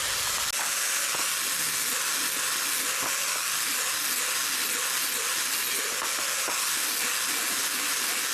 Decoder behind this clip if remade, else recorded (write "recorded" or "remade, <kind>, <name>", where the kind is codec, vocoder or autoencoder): recorded